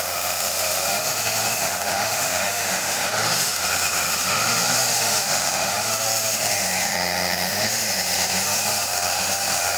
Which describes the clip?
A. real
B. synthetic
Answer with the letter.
B